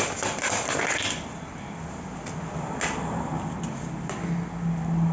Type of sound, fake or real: real